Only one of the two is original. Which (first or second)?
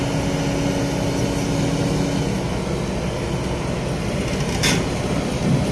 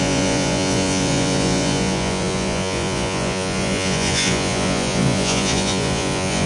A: first